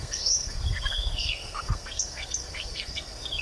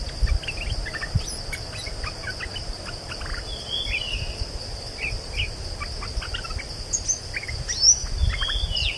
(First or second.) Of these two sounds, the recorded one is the second